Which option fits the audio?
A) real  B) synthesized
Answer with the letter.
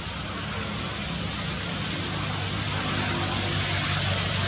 A